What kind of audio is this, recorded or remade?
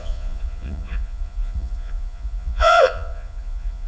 remade